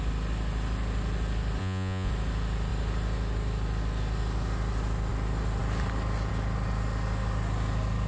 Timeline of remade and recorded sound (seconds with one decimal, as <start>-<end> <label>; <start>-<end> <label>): 0.0-1.6 recorded; 1.6-2.1 remade; 2.1-8.1 recorded